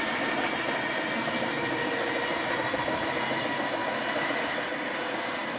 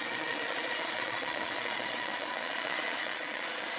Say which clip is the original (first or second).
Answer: first